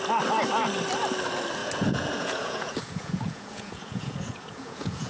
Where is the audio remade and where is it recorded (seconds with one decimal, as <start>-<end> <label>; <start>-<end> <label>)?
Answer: 0.0-1.6 recorded; 1.6-5.1 remade